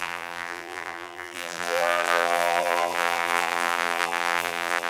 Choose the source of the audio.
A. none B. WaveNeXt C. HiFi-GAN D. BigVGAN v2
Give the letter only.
D